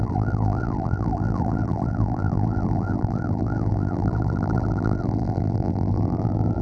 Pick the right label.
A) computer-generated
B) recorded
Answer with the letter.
A